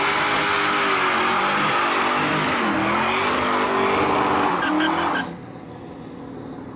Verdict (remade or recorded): recorded